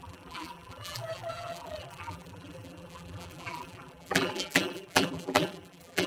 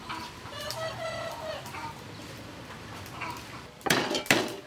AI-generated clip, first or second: first